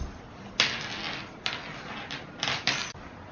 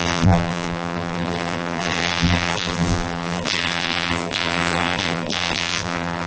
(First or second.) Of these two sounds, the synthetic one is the second